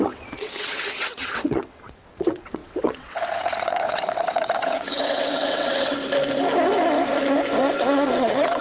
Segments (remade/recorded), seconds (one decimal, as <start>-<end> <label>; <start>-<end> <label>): 0.0-6.0 remade; 6.0-7.6 recorded; 7.6-8.6 remade